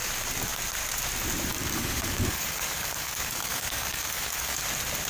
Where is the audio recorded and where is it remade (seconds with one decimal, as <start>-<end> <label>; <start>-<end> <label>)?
0.0-1.5 recorded; 1.5-4.6 remade; 4.6-5.1 recorded